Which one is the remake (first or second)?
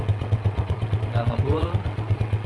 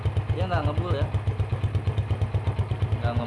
first